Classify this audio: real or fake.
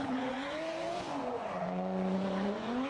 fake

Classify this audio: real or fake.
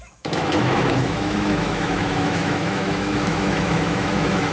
fake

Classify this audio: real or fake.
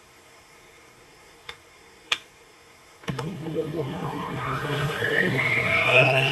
fake